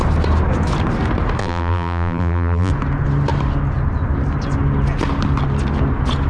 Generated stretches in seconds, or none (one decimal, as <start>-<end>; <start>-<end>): 1.4-2.7